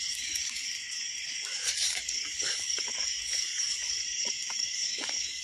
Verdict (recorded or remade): remade